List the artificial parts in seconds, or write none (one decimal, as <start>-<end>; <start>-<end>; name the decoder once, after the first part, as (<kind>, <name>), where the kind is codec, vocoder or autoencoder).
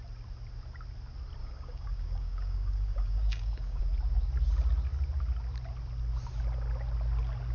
1.4-3.8 (codec, DAC)